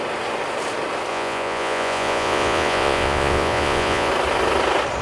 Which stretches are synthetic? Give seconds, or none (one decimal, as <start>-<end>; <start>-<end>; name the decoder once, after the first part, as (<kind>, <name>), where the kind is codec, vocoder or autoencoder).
1.1-4.1 (vocoder, Vocos)